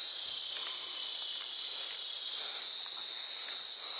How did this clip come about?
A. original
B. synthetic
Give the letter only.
A